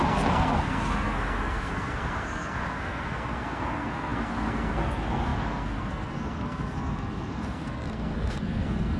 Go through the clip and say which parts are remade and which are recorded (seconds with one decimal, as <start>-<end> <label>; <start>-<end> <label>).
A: 0.0-9.0 remade